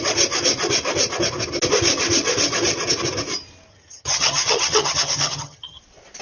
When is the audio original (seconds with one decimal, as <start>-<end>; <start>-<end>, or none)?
0.0-3.7; 5.8-6.2